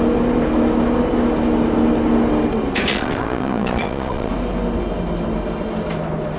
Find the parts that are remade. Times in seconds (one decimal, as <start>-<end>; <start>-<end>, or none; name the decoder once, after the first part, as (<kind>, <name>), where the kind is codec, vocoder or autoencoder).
2.9-4.3 (vocoder, Vocos)